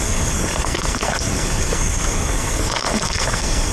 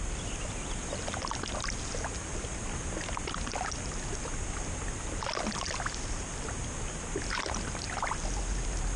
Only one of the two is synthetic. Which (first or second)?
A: first